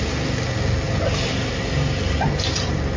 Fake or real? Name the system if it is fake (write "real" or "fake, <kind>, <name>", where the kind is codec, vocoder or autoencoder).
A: real